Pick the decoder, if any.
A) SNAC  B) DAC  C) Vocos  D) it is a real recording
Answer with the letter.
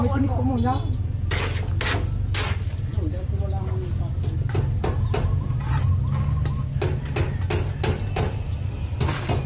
D